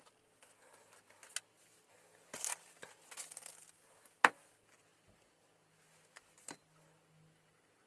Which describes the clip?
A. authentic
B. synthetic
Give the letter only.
A